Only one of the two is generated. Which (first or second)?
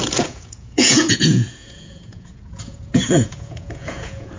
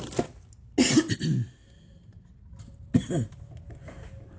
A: first